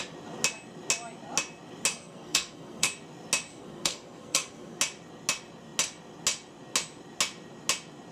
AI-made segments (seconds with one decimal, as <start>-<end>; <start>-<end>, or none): 1.9-2.9; 3.5-4.8